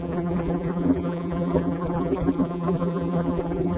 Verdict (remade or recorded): remade